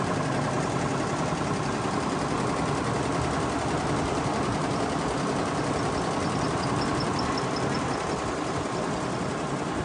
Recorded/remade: recorded